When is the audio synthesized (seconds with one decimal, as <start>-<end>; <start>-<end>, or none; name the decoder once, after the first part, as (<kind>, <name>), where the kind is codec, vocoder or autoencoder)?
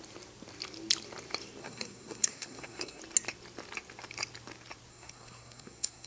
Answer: 1.6-3.0 (codec, SNAC); 4.9-6.1